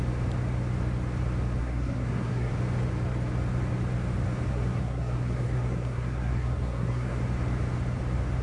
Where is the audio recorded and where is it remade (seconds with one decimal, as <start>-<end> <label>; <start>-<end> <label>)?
0.0-1.6 recorded; 1.6-2.5 remade; 2.5-4.5 recorded; 4.5-7.2 remade; 7.2-8.4 recorded